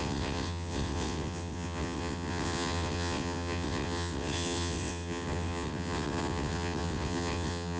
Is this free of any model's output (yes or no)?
no